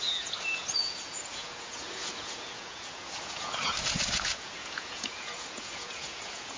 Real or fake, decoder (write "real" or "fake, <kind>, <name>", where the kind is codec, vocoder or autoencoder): fake, vocoder, Vocos